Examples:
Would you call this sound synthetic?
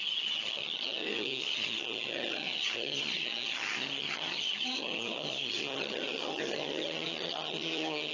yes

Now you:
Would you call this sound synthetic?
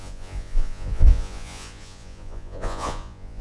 yes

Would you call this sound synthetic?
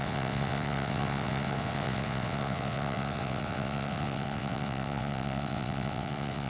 yes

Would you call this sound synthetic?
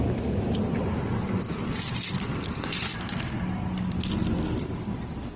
no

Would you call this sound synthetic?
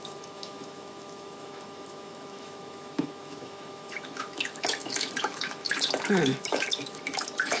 yes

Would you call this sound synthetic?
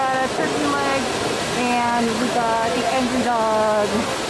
no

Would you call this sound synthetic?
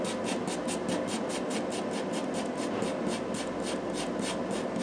no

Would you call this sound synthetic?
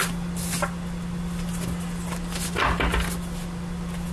no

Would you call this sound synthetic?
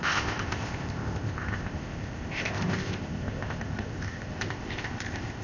yes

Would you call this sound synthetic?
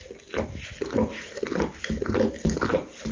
no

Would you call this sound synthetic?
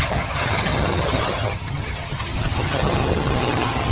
yes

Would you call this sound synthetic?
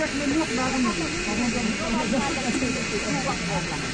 no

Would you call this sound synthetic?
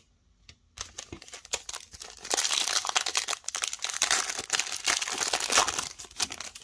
no